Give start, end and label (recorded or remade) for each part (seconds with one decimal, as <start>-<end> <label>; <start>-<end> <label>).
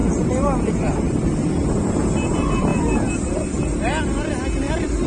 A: 0.0-1.5 remade; 1.5-5.1 recorded